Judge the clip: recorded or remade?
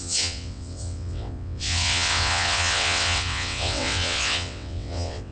remade